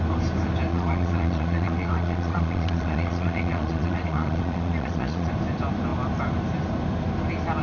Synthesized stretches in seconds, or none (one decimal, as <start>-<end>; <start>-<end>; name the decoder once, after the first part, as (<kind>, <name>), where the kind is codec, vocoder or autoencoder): 0.7-5.3 (vocoder, Vocos)